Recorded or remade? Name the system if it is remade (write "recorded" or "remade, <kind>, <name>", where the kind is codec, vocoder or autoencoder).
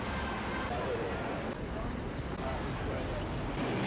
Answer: recorded